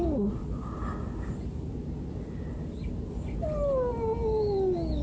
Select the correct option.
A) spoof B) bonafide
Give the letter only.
B